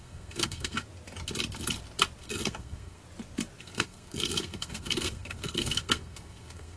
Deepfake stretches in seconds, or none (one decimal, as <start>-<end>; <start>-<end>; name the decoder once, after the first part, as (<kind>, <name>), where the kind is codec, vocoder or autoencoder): 0.0-0.8 (codec, SNAC); 2.2-3.0; 3.6-6.8